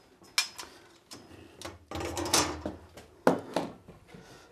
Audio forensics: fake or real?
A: real